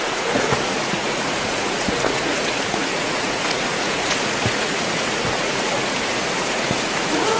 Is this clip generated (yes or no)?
yes